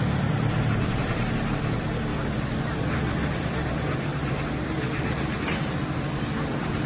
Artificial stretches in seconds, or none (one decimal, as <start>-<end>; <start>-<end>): 0.0-6.9